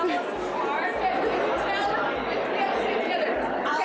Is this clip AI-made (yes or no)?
no